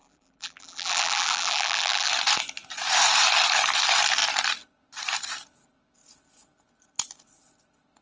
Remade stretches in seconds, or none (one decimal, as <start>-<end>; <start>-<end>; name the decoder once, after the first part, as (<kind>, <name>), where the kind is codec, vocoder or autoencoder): 0.0-2.1 (vocoder, BigVGAN v2)